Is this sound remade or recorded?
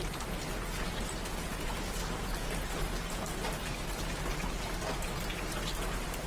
recorded